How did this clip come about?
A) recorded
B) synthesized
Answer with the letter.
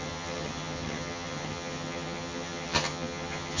B